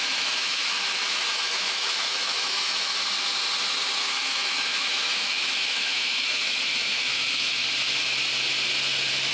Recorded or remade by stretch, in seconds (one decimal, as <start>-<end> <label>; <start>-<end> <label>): 0.0-2.9 remade; 2.9-4.0 recorded; 4.0-7.6 remade; 7.6-9.3 recorded